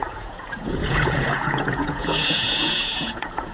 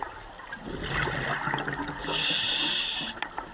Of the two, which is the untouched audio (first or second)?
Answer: second